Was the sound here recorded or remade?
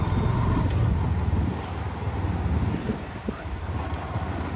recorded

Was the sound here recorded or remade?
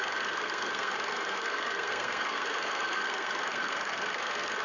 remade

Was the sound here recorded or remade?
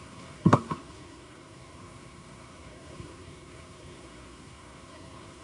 remade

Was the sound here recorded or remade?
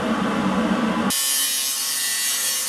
recorded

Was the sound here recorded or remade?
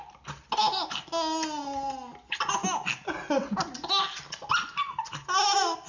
recorded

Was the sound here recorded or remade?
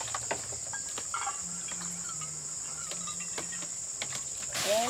recorded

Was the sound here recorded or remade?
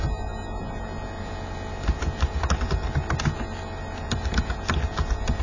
recorded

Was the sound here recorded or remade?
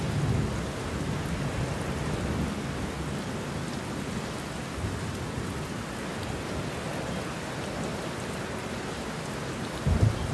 recorded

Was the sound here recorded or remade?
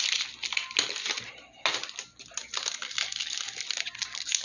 recorded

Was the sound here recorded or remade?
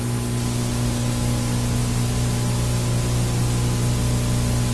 recorded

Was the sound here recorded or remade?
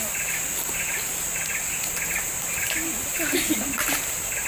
recorded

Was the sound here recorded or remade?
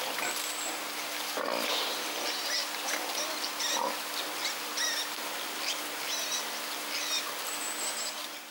recorded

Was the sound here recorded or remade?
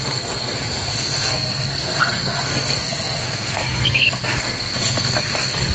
remade